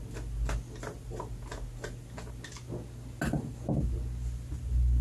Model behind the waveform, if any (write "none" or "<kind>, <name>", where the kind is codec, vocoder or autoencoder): none